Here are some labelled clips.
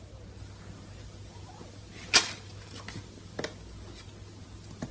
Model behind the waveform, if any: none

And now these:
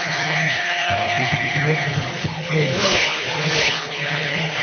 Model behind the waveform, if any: codec, HILCodec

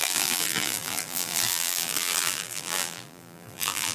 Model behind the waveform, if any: vocoder, BigVGAN v2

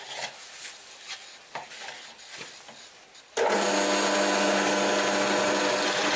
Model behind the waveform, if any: none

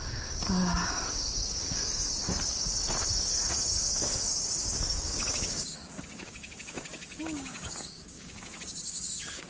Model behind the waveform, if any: codec, DAC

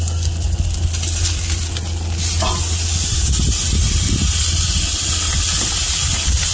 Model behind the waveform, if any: none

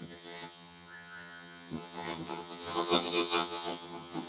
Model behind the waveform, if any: vocoder, HiFi-GAN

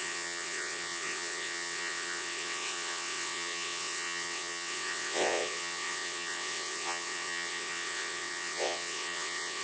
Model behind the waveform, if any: vocoder, WaveNeXt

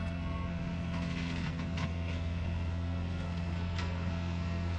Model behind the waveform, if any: codec, SNAC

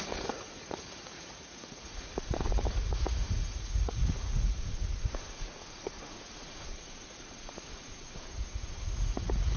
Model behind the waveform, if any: vocoder, Vocos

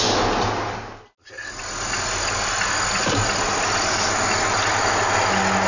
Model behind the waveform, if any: none